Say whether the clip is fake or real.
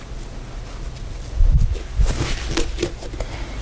real